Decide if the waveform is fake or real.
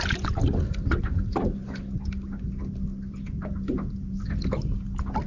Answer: real